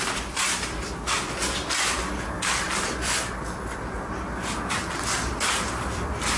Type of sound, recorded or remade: recorded